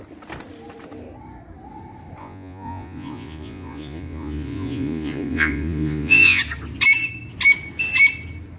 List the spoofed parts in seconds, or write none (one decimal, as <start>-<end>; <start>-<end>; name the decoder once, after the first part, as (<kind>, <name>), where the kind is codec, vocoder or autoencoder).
2.2-6.4 (vocoder, Vocos)